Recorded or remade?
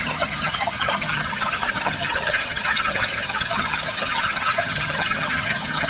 remade